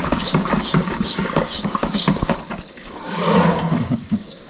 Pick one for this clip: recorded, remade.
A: remade